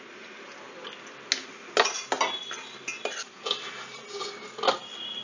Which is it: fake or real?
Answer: real